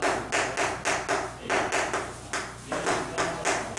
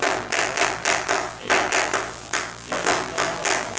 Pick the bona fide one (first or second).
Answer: first